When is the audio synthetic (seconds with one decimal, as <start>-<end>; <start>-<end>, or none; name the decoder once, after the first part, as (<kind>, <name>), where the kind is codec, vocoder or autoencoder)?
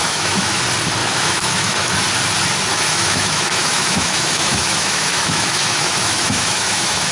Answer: 0.0-0.6 (autoencoder, DAC-VAE); 1.0-2.0; 2.7-7.1